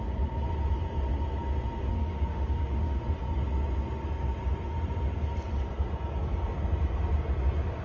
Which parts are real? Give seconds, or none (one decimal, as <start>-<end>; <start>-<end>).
0.0-1.9; 3.0-7.8